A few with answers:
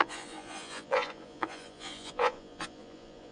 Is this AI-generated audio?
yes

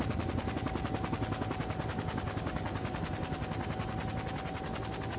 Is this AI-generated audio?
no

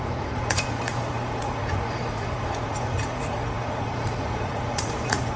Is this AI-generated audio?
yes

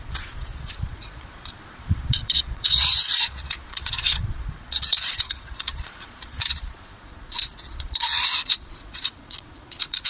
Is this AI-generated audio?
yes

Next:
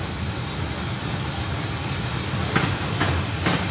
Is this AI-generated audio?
no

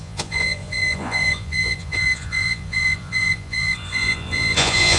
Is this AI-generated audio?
yes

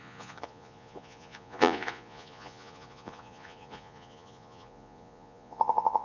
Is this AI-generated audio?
yes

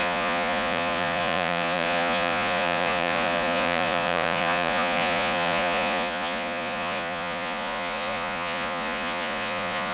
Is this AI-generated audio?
yes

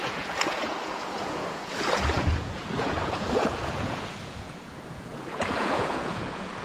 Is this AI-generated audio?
yes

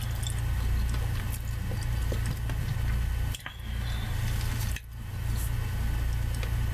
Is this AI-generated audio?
no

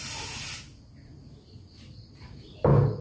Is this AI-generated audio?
no